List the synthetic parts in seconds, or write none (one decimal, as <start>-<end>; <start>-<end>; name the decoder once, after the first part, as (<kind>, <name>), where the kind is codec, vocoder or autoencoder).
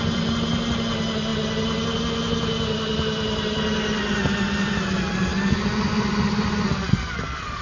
none